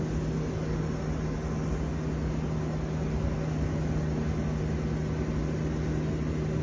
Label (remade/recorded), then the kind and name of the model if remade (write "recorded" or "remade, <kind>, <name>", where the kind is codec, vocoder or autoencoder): recorded